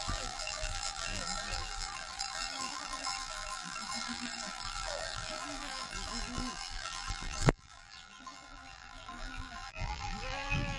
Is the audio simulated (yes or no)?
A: yes